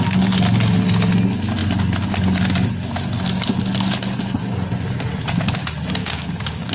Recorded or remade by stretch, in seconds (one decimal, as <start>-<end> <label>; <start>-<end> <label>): 0.0-6.0 recorded; 6.0-6.7 remade